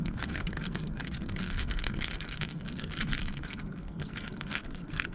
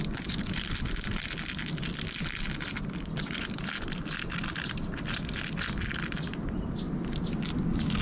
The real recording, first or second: second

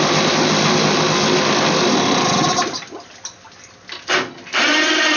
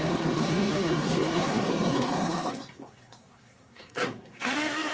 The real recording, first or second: first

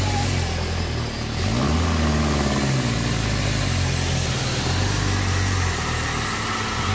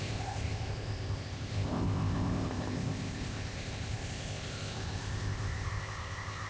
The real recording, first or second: first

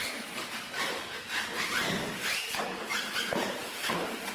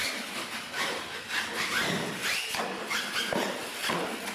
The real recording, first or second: second